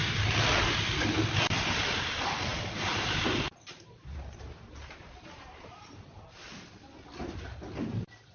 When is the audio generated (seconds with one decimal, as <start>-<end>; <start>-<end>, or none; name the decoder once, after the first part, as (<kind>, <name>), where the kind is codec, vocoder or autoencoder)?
2.5-6.5 (vocoder, BigVGAN v2)

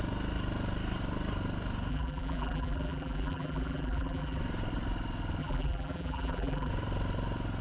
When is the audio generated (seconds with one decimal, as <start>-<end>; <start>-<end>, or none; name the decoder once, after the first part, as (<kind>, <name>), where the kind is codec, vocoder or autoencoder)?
1.9-4.4 (vocoder, BigVGAN v2); 5.4-6.7

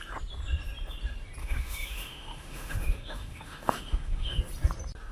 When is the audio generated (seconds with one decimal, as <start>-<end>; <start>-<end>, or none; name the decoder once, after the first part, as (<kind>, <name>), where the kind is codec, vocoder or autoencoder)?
1.4-4.4 (autoencoder, DAC-VAE)

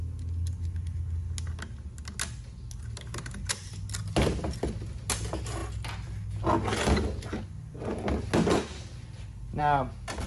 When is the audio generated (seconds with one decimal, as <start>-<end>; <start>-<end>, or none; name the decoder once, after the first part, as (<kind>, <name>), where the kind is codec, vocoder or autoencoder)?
none